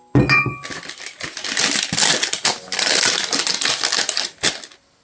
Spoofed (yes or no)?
no